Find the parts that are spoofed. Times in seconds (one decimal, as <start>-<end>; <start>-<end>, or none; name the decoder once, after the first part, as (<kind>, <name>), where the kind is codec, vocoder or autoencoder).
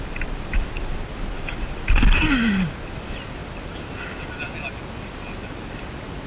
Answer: none